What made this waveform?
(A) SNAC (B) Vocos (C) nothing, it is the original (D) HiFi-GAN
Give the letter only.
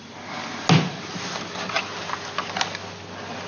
C